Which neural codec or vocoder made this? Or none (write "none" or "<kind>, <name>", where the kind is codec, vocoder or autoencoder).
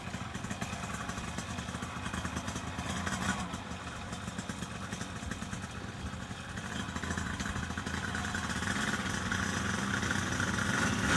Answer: none